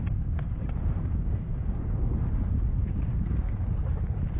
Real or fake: fake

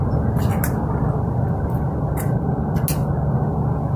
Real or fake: real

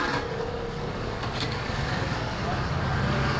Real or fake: fake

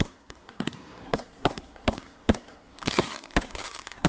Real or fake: fake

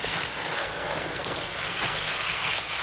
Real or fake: fake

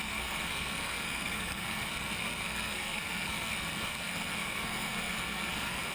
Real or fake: fake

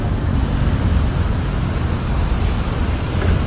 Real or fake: real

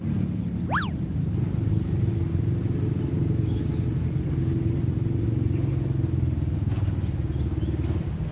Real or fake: real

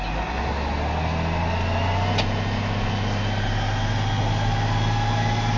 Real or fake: real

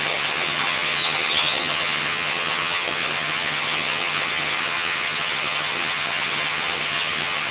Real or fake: fake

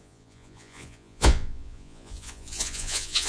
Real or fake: fake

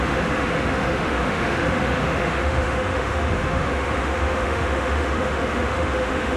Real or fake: fake